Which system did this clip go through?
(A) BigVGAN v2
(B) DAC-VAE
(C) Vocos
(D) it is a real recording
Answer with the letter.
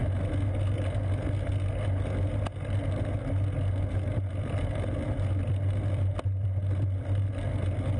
D